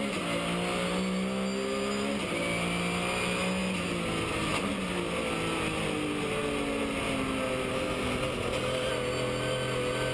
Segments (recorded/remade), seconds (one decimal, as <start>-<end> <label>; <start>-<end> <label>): 0.0-10.1 recorded